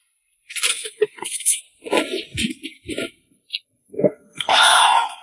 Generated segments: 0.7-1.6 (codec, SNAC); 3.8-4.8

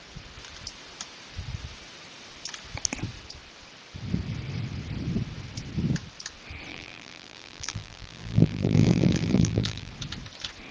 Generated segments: 6.7-9.9 (vocoder, BigVGAN v2)

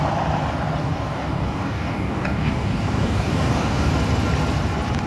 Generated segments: 0.8-3.9 (codec, DAC)

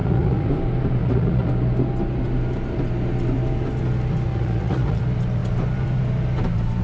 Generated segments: 0.0-0.5 (vocoder, Vocos); 1.0-1.5; 4.3-5.0

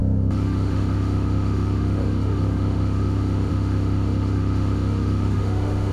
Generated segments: 0.0-5.9 (autoencoder, DAC-VAE)

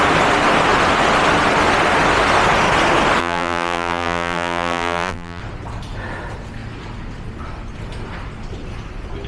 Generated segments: 3.2-5.4 (vocoder, BigVGAN v2)

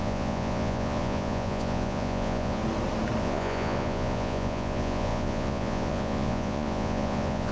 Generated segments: 0.0-2.6 (vocoder, Vocos); 3.2-7.5